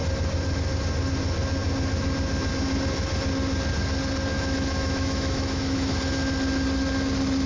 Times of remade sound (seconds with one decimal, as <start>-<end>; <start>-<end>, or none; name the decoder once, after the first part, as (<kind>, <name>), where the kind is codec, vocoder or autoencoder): 4.3-6.0 (autoencoder, DAC-VAE)